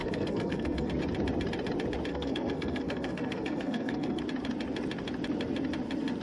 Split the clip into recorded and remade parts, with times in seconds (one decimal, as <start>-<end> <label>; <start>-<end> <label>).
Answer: 0.0-0.9 remade; 0.9-2.1 recorded; 2.1-4.2 remade; 4.2-6.2 recorded